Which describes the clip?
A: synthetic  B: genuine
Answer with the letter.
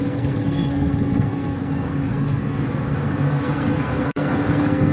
A